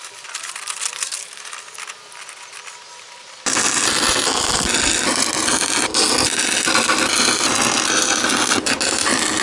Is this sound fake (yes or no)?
no